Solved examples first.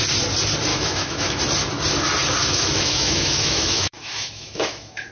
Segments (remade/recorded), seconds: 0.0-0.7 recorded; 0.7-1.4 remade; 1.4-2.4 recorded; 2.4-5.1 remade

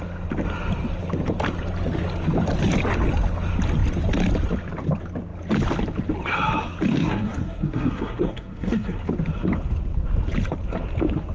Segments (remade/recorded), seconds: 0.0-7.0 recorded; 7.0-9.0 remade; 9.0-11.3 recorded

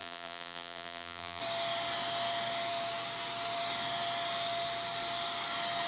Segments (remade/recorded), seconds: 0.0-1.4 remade; 1.4-5.9 recorded

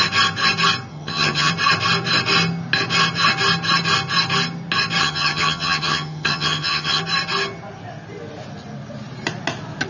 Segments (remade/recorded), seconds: 0.0-0.9 recorded; 0.9-1.5 remade; 1.5-5.0 recorded; 5.0-7.0 remade; 7.0-9.9 recorded

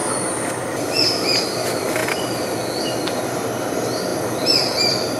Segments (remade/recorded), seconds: 0.0-4.1 recorded; 4.1-5.2 remade